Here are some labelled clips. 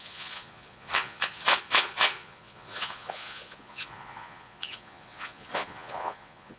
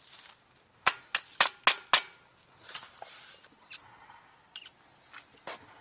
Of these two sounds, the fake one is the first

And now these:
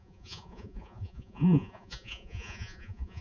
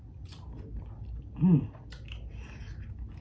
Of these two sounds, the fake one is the first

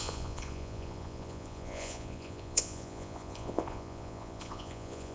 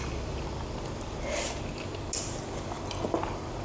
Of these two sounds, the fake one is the first